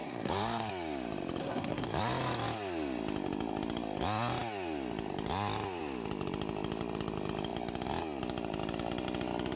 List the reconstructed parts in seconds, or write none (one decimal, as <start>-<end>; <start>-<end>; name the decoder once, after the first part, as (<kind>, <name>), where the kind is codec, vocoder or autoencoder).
0.0-0.7 (codec, SNAC); 1.4-2.0

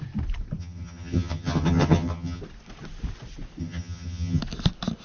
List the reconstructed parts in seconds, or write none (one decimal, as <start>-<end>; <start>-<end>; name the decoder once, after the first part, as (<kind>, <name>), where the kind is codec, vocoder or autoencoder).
0.6-2.4 (vocoder, HiFi-GAN); 3.6-4.4

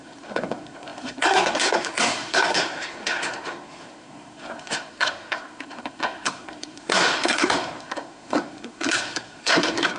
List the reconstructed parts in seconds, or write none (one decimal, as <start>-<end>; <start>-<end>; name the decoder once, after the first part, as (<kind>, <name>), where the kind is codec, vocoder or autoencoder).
0.0-10.0 (codec, SNAC)

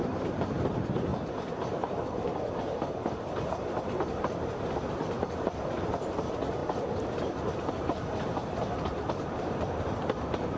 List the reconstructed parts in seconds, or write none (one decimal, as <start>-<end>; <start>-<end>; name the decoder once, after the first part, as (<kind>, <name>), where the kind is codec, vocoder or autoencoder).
0.0-1.1 (vocoder, BigVGAN v2); 1.8-10.6

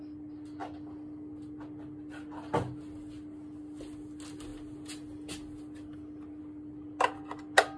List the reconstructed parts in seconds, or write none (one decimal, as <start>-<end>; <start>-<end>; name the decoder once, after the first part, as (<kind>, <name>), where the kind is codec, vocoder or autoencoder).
none